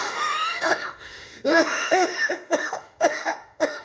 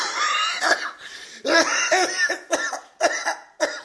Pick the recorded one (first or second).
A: second